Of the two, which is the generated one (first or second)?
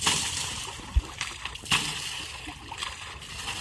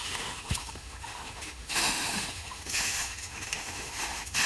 second